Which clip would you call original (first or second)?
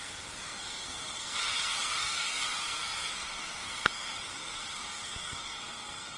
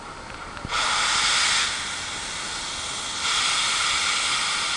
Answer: second